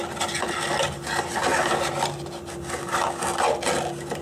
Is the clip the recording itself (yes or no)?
yes